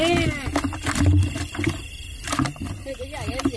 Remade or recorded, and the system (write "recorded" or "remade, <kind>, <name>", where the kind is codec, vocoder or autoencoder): recorded